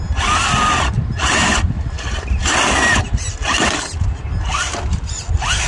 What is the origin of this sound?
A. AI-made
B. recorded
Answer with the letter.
B